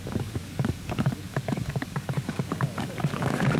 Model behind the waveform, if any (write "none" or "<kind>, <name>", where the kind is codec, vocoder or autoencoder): codec, DAC